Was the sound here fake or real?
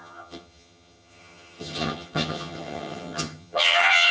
fake